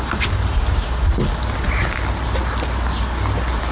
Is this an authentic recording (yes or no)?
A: yes